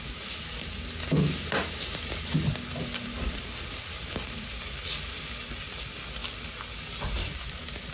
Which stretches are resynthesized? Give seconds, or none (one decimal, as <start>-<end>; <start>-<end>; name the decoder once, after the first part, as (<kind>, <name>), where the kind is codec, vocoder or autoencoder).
none